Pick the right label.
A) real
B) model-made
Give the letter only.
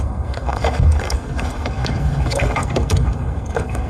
B